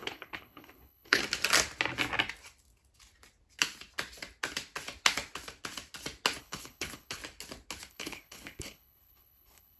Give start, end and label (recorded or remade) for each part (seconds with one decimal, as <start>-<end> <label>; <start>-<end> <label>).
0.0-1.2 remade; 1.2-6.4 recorded; 6.4-7.2 remade; 7.2-7.9 recorded; 7.9-9.8 remade

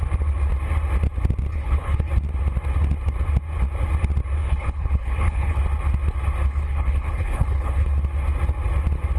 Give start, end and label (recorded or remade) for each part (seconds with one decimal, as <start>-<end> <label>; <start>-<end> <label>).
0.0-1.5 recorded; 1.5-2.1 remade; 2.1-4.4 recorded; 4.4-5.6 remade; 5.6-6.5 recorded; 6.5-7.9 remade; 7.9-9.2 recorded

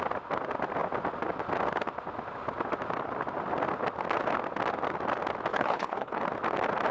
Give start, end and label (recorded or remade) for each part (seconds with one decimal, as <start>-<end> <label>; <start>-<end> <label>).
0.0-5.5 recorded; 5.5-6.2 remade; 6.2-6.9 recorded

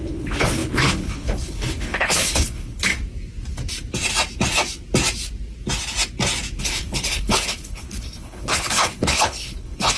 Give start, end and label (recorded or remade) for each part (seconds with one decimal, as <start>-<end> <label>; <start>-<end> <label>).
0.0-2.9 remade; 2.9-6.6 recorded; 6.6-10.0 remade

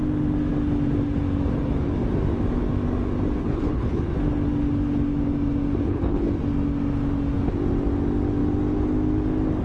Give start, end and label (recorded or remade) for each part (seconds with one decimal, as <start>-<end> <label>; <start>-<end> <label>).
0.0-3.4 recorded; 3.4-4.0 remade; 4.0-5.8 recorded; 5.8-6.3 remade; 6.3-9.6 recorded

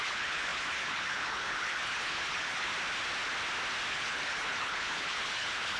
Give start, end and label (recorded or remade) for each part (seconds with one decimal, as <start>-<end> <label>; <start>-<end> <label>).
0.0-2.7 remade; 2.7-3.9 recorded; 3.9-5.8 remade

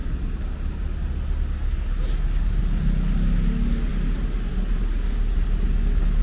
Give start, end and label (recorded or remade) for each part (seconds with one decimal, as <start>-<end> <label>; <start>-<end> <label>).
0.0-6.2 recorded